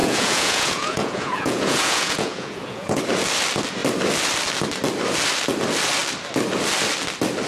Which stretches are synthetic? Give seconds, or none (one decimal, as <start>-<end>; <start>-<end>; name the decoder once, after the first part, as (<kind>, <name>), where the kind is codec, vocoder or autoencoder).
0.0-3.0 (vocoder, Vocos)